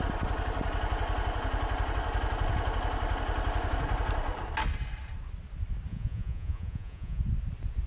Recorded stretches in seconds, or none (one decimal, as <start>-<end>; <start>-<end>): 0.0-5.9; 7.2-7.9